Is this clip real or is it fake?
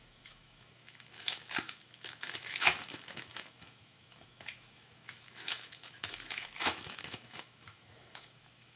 fake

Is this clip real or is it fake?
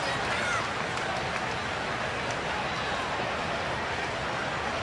real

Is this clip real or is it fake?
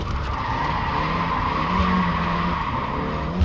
real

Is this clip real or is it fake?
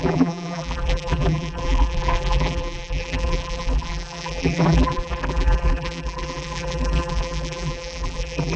fake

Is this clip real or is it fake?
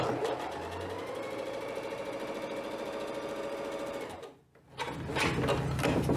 real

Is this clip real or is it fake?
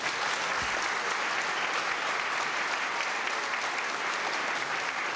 real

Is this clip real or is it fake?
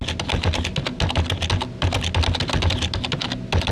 real